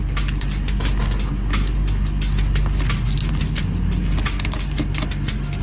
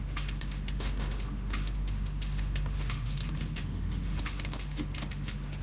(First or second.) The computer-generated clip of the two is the second